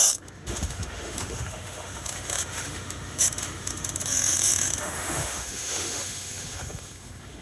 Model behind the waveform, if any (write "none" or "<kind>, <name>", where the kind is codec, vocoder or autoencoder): autoencoder, DAC-VAE